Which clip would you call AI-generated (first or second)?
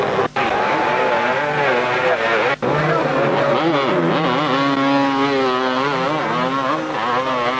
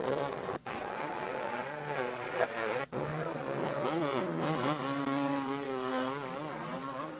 second